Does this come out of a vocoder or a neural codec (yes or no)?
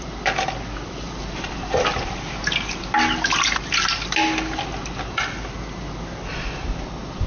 no